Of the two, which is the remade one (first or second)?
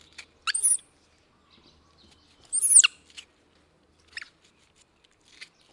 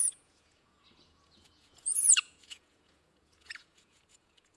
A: second